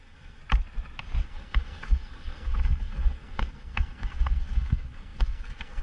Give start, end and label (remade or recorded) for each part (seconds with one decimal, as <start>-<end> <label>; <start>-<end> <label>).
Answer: 0.0-0.4 remade; 0.4-1.2 recorded; 1.2-5.8 remade

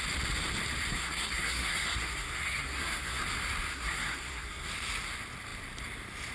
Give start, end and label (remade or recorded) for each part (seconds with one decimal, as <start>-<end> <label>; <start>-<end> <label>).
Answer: 0.0-0.9 recorded; 0.9-3.2 remade; 3.2-3.7 recorded; 3.7-4.7 remade; 4.7-6.3 recorded

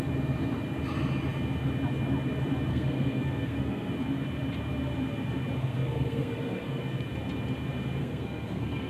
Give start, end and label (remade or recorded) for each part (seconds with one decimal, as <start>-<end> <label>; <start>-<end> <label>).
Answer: 0.0-2.7 recorded; 2.7-3.9 remade; 3.9-5.6 recorded; 5.6-6.8 remade; 6.8-8.0 recorded; 8.0-8.9 remade

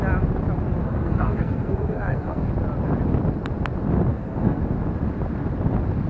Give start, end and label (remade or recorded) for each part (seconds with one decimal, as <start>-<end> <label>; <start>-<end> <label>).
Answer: 0.0-0.8 recorded; 0.8-2.5 remade; 2.5-4.1 recorded; 4.1-4.6 remade; 4.6-6.1 recorded

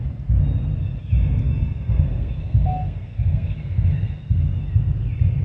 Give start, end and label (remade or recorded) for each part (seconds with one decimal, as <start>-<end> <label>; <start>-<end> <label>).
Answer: 0.0-1.4 recorded; 1.4-4.6 remade; 4.6-5.4 recorded

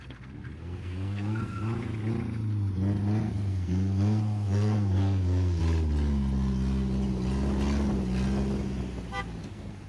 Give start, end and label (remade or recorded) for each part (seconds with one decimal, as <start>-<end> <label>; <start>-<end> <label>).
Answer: 0.0-1.6 remade; 1.6-3.2 recorded; 3.2-5.6 remade; 5.6-9.4 recorded; 9.4-9.9 remade